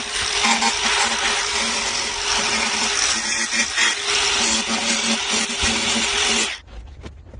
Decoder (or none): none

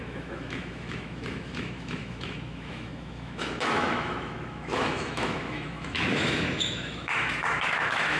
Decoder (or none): autoencoder, DAC-VAE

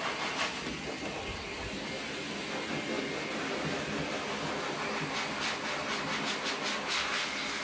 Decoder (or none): none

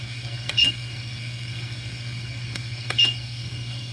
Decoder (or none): codec, SNAC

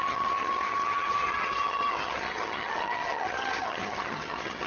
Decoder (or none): vocoder, HiFi-GAN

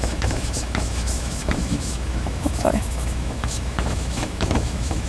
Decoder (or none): autoencoder, DAC-VAE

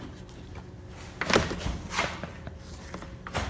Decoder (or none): none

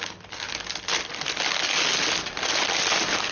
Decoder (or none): none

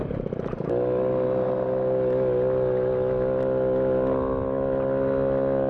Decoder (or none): none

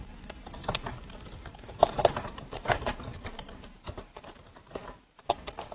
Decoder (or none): vocoder, BigVGAN v2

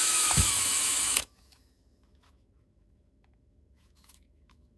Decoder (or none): autoencoder, DAC-VAE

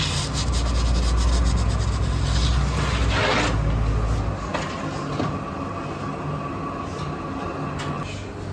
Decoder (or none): none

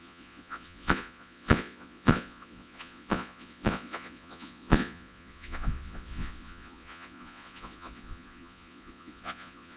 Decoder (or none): vocoder, Vocos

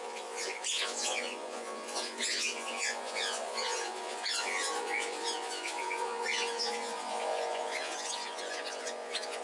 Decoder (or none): vocoder, Vocos